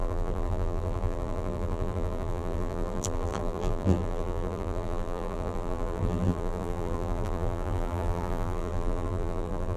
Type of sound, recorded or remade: remade